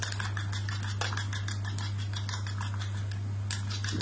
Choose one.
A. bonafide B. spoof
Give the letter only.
A